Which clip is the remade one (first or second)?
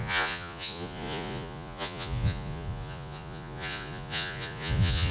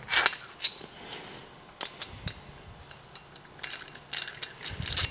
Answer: first